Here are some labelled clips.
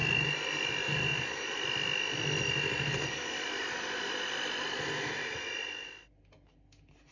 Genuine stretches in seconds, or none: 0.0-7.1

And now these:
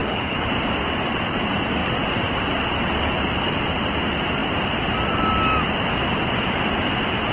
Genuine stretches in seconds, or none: 0.5-7.3

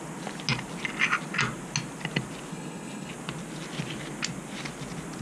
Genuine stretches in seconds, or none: 0.0-2.5; 3.1-5.2

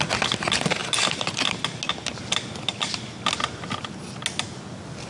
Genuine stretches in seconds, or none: 0.0-5.1